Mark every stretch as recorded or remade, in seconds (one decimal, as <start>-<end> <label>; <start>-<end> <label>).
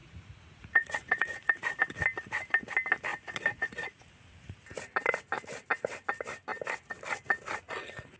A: 0.0-1.8 remade; 1.8-3.1 recorded; 3.1-4.0 remade; 4.0-8.2 recorded